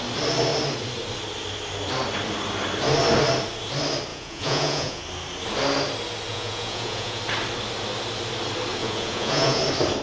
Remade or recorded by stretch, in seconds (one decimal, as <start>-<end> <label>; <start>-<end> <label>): 0.0-4.1 recorded; 4.1-5.0 remade; 5.0-6.3 recorded; 6.3-7.2 remade; 7.2-8.8 recorded; 8.8-9.6 remade; 9.6-10.0 recorded